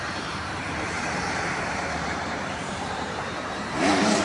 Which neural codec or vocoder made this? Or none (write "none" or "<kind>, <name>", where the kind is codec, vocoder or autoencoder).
vocoder, BigVGAN v2